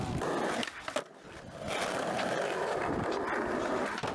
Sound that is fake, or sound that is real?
real